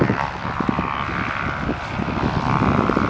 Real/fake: real